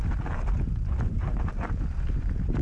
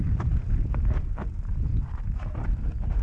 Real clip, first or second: first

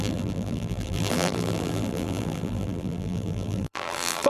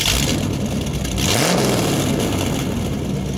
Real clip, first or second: second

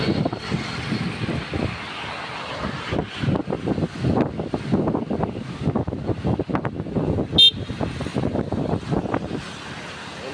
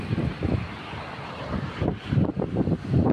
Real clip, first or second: first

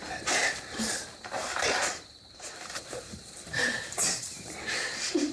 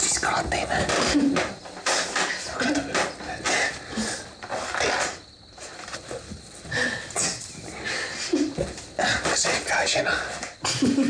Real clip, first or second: second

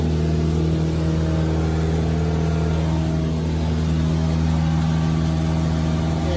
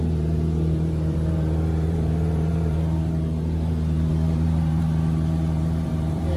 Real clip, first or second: first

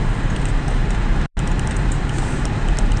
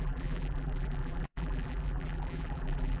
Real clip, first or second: first